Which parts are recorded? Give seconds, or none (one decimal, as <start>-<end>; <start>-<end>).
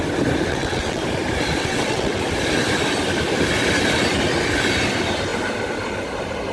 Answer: 0.0-0.5; 1.0-1.6; 2.2-6.5